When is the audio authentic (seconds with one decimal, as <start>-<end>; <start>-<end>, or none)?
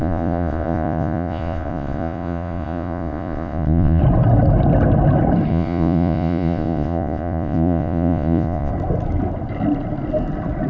4.0-5.5; 8.7-10.7